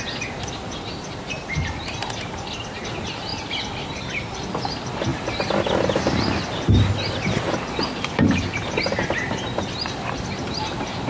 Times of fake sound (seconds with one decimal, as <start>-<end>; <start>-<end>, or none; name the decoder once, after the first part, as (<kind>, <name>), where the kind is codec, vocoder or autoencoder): none

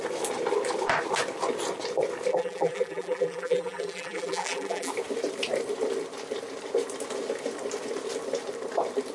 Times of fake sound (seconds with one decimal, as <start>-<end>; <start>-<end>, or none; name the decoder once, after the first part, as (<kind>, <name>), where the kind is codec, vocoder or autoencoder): 2.3-4.9 (vocoder, BigVGAN v2)

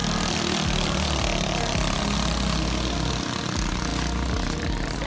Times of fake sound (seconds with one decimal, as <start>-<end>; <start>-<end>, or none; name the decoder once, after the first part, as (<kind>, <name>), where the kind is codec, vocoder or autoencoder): none

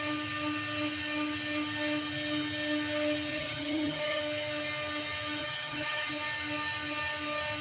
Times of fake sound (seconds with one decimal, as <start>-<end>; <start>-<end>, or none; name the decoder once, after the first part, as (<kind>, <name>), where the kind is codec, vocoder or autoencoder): 3.3-4.2 (vocoder, HiFi-GAN); 5.4-6.1

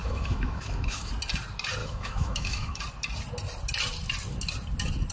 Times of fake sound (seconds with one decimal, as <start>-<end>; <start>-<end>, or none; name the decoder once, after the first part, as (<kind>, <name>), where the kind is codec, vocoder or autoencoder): 0.0-1.1 (autoencoder, DAC-VAE); 1.8-2.8

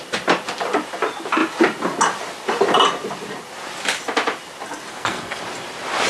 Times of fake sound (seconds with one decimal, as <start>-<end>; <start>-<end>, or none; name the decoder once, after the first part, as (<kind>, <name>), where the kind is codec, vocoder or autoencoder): 4.9-5.4 (codec, SNAC)